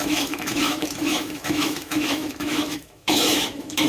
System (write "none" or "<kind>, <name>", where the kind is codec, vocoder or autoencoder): autoencoder, DAC-VAE